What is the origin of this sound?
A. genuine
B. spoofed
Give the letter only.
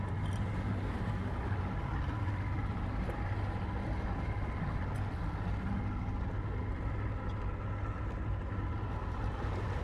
A